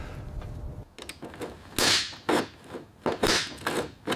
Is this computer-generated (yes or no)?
no